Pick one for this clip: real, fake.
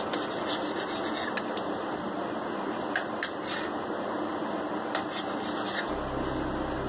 real